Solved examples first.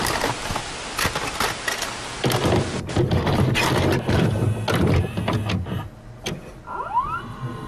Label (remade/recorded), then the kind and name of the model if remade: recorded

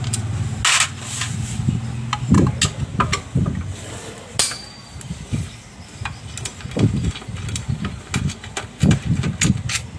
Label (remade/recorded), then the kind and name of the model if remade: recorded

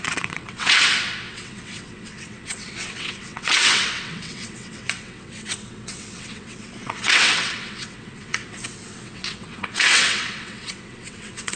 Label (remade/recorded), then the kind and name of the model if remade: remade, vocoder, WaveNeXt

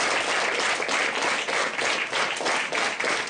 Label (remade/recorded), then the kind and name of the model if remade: recorded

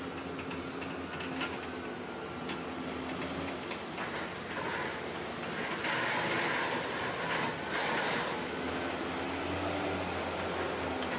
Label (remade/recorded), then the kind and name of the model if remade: recorded